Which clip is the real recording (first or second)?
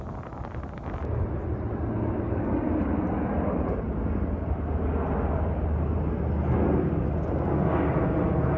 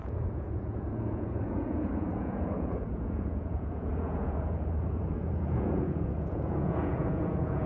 first